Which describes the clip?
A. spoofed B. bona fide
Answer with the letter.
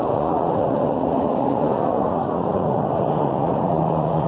A